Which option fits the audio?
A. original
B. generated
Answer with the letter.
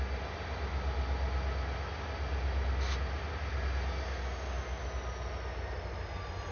A